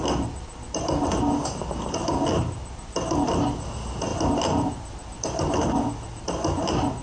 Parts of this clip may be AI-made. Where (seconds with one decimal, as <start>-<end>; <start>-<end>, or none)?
none